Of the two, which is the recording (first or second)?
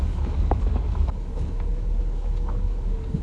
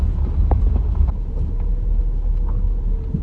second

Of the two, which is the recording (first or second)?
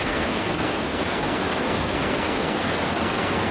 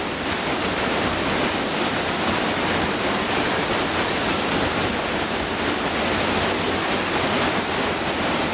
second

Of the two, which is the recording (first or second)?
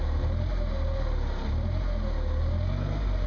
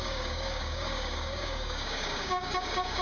first